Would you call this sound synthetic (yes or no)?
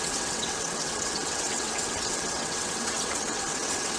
yes